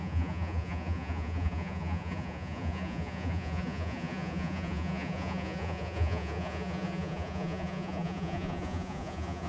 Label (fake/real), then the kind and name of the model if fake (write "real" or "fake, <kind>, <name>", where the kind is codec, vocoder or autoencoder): fake, vocoder, Vocos